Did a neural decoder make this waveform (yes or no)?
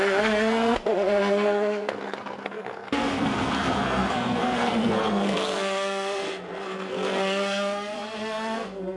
yes